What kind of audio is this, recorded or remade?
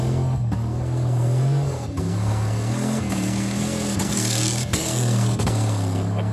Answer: remade